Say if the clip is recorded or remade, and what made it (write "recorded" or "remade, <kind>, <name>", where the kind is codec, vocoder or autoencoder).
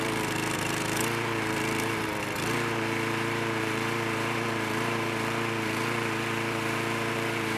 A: remade, vocoder, BigVGAN v2